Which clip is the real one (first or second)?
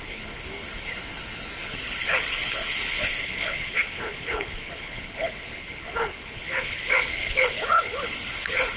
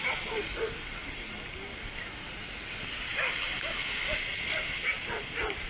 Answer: second